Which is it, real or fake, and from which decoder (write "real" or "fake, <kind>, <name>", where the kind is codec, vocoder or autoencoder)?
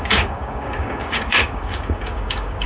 fake, codec, DAC